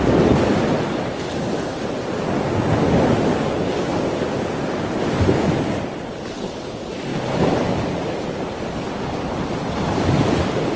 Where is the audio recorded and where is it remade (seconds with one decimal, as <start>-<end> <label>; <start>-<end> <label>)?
0.0-10.8 recorded